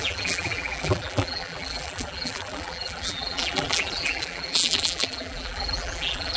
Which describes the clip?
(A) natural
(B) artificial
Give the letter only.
B